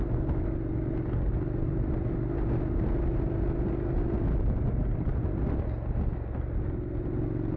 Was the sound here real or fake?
real